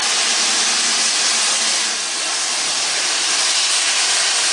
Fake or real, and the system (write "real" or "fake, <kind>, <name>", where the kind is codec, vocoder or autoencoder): real